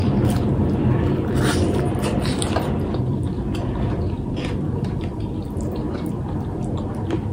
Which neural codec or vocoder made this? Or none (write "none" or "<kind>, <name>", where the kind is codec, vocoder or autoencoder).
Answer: vocoder, BigVGAN v2